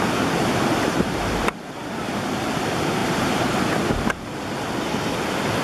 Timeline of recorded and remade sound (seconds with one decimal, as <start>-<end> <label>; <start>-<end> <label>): 0.0-0.7 recorded; 0.7-1.6 remade; 1.6-3.0 recorded; 3.0-3.6 remade; 3.6-5.6 recorded